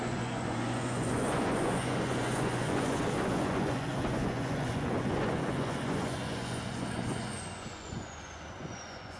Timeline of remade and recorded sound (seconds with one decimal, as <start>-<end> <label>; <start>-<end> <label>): 0.0-9.2 remade